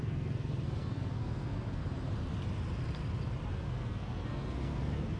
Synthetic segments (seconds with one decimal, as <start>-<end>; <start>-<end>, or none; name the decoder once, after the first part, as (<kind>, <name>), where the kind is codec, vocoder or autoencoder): 0.0-1.8 (codec, SNAC); 3.5-5.2

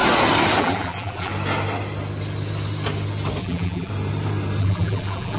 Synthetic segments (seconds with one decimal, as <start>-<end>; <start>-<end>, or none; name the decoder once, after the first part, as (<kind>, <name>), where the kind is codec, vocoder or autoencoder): 0.6-1.3 (vocoder, BigVGAN v2); 3.4-3.9; 4.6-5.4

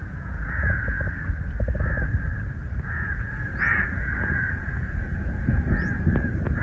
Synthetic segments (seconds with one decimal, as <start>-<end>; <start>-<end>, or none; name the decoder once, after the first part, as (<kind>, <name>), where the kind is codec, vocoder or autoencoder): 0.0-1.4 (vocoder, Vocos); 2.6-6.0

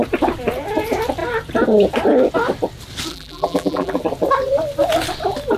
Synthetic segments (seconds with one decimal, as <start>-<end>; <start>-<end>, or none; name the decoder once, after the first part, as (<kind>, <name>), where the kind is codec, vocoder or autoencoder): 3.1-4.0 (vocoder, BigVGAN v2)

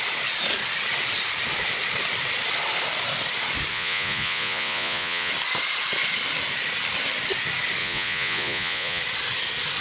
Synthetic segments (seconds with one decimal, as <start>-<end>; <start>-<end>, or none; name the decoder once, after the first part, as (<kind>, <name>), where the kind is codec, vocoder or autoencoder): 3.7-5.3 (vocoder, Vocos); 7.8-9.0

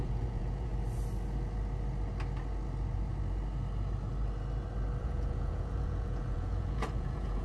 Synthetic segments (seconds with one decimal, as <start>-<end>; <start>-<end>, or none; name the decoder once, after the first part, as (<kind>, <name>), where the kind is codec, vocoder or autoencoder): 0.0-0.7 (vocoder, Vocos); 5.0-7.4